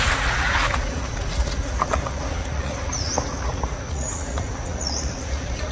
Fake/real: fake